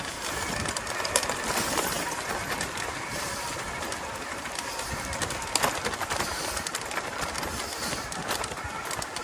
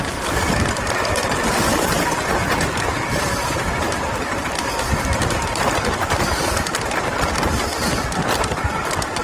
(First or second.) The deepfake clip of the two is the second